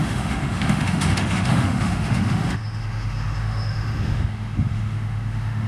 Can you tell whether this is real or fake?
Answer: fake